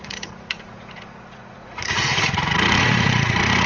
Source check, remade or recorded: remade